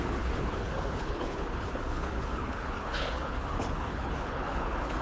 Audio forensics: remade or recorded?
remade